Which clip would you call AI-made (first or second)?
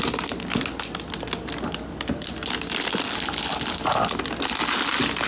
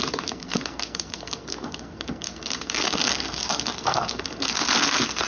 second